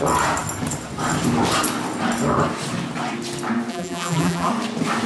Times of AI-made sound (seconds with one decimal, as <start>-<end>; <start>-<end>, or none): 3.7-4.5